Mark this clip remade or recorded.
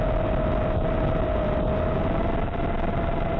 recorded